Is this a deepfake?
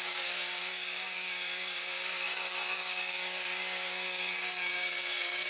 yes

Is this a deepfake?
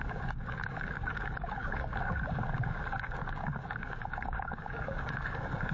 yes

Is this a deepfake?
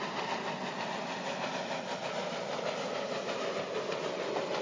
no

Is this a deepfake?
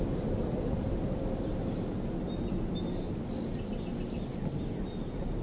no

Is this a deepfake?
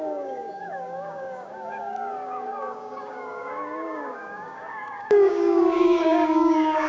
yes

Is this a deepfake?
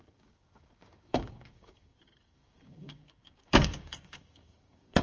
yes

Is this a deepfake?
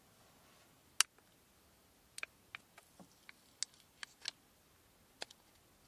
no